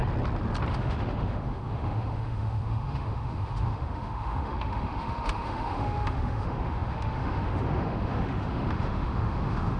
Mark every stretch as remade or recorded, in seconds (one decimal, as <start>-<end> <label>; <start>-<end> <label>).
0.0-0.7 recorded; 0.7-9.8 remade